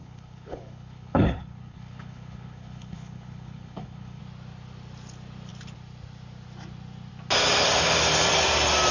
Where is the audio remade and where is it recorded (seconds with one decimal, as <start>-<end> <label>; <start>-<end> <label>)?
0.0-4.2 remade; 4.2-8.9 recorded